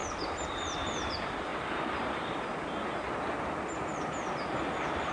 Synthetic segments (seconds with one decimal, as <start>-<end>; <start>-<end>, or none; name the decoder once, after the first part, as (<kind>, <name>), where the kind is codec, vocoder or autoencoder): 0.0-1.5 (vocoder, BigVGAN v2); 4.6-5.1